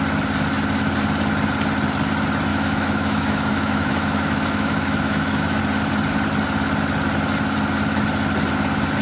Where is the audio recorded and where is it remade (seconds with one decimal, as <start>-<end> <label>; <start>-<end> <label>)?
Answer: 0.0-2.5 recorded; 2.5-5.6 remade; 5.6-9.0 recorded